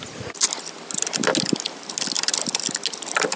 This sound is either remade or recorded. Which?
recorded